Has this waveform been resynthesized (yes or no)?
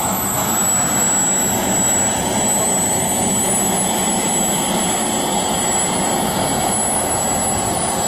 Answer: no